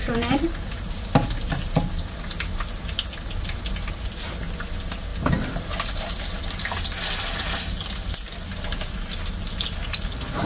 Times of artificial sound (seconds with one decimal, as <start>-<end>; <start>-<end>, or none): 5.1-6.1